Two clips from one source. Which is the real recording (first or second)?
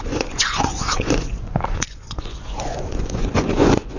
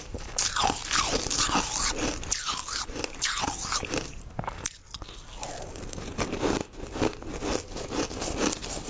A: second